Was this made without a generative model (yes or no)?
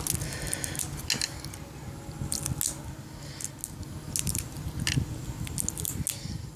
yes